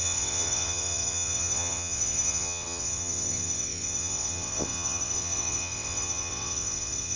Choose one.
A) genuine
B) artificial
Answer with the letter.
B